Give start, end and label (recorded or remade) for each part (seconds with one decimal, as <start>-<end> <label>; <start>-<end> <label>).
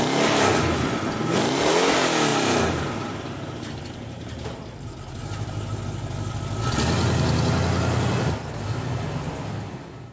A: 0.0-2.3 recorded; 2.3-4.9 remade; 4.9-10.1 recorded